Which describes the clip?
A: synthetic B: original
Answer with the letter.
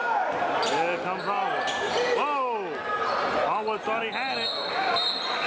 B